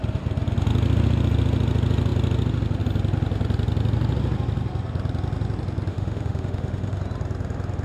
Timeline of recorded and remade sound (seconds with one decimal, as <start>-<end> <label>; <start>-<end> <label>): 0.0-5.9 recorded; 5.9-7.0 remade; 7.0-7.8 recorded